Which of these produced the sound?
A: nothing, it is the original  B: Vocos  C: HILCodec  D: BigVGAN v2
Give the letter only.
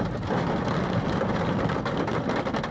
A